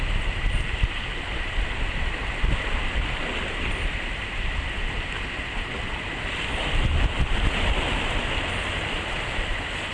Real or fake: real